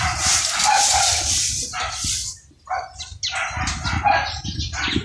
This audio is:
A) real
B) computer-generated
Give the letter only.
A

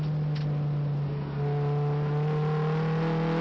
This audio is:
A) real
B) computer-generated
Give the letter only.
A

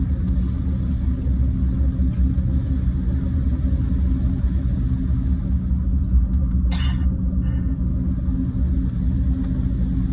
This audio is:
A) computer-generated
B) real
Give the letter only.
B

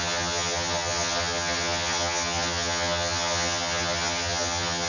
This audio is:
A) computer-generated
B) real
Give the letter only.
A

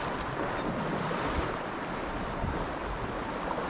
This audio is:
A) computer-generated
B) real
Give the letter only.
B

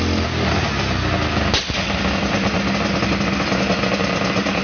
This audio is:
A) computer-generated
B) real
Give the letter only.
B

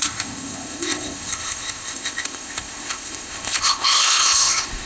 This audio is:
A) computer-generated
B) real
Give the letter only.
A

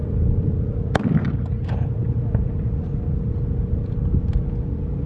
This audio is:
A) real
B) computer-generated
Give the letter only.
A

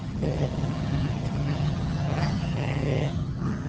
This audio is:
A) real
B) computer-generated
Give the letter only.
B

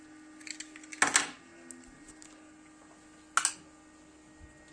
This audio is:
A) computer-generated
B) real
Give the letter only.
B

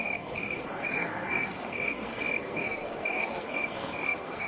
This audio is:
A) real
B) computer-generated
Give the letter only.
B